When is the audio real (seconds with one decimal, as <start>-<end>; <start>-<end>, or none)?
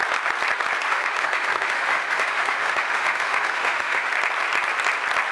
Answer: 0.0-0.9; 4.1-5.3